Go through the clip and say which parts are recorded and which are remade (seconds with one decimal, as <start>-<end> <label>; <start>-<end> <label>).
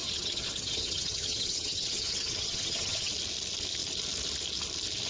0.0-3.1 remade; 3.1-5.1 recorded